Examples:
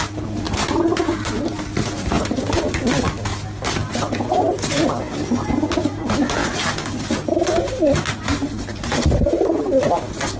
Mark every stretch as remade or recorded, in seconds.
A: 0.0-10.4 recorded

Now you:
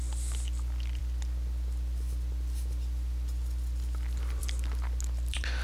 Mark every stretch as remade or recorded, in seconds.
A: 0.0-5.6 recorded

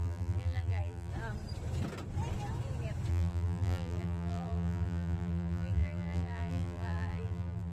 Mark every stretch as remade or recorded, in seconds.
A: 0.0-1.1 remade; 1.1-3.1 recorded; 3.1-7.7 remade

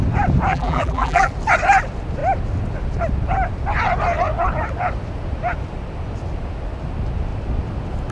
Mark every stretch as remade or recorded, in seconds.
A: 0.0-0.5 recorded; 0.5-1.3 remade; 1.3-8.1 recorded